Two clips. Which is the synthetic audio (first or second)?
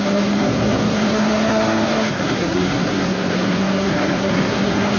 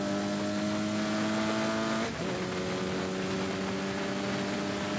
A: first